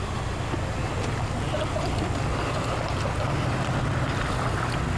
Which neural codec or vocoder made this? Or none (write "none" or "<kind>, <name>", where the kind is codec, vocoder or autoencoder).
none